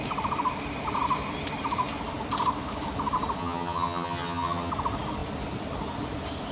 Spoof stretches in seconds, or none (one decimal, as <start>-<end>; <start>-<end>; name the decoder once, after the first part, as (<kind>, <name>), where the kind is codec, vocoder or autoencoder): 3.4-4.7 (vocoder, HiFi-GAN)